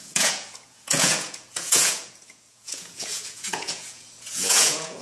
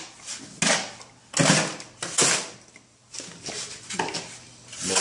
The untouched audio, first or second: second